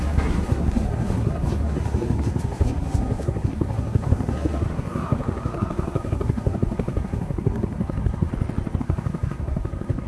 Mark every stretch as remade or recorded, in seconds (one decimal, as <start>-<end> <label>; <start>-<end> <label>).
0.0-8.3 remade; 8.3-8.8 recorded; 8.8-10.1 remade